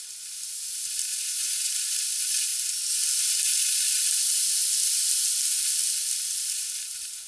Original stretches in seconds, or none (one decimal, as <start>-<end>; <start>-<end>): 0.0-1.1; 1.7-7.3

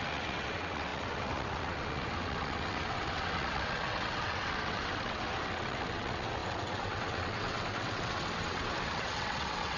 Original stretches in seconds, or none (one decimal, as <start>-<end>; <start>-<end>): none

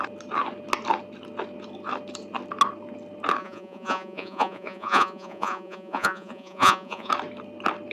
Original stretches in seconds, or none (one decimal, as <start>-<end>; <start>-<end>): 0.0-3.4; 7.1-7.9

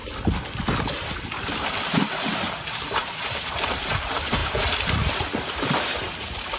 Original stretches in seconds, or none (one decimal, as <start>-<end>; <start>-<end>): 0.0-1.4

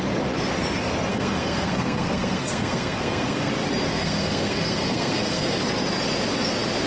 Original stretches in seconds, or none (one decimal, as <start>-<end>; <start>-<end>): 0.0-1.1; 3.5-3.9; 5.6-6.9

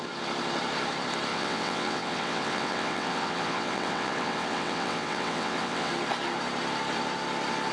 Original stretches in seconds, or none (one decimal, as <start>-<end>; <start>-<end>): 0.0-1.3; 5.9-7.7

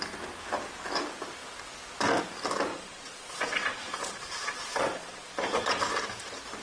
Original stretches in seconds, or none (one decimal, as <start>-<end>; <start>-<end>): 0.0-2.7; 5.8-6.6

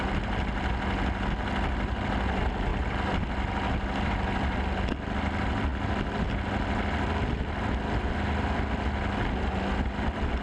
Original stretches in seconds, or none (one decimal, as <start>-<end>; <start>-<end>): 0.0-10.4